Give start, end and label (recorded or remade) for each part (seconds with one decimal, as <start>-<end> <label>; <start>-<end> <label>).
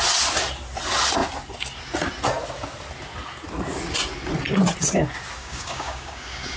0.0-5.4 recorded; 5.4-6.6 remade